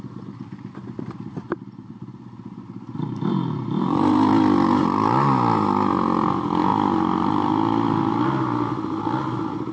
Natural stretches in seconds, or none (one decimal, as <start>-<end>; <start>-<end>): 0.0-0.8; 4.0-9.7